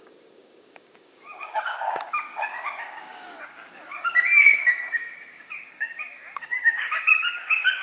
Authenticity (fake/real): fake